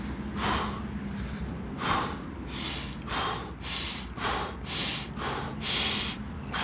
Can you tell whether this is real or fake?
real